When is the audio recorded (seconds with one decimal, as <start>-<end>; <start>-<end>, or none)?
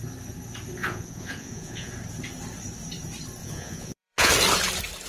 0.0-0.8; 1.9-3.4; 4.3-5.1